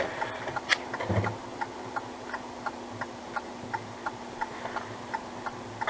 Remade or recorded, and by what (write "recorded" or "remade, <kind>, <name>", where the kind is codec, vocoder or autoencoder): recorded